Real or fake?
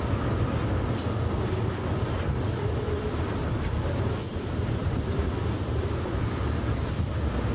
real